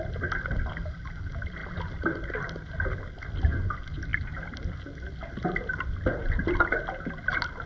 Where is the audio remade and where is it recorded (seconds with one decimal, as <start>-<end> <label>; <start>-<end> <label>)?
0.0-7.7 recorded